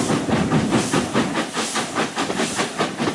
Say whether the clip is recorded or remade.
recorded